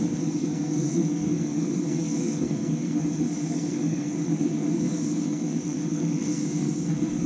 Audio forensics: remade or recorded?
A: remade